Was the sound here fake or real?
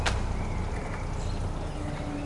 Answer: real